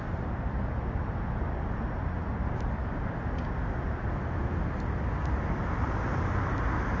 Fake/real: real